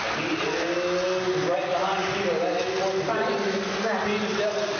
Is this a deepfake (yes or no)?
no